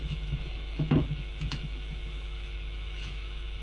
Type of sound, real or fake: fake